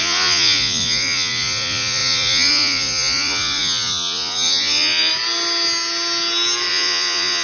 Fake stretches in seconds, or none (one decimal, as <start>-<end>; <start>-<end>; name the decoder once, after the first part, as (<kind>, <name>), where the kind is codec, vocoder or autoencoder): 0.0-5.1 (vocoder, Vocos); 6.7-7.4